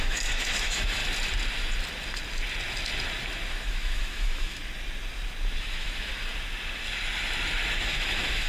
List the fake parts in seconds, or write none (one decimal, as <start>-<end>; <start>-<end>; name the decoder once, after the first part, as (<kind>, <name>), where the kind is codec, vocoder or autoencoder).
0.0-1.0 (autoencoder, DAC-VAE); 3.5-4.6; 5.6-6.1; 7.9-8.5